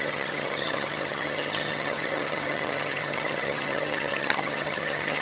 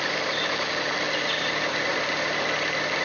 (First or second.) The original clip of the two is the second